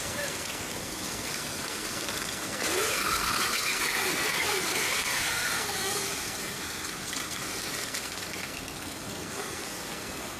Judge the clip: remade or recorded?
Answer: remade